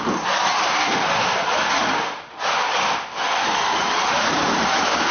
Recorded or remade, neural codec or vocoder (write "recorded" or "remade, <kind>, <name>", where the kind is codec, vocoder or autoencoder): recorded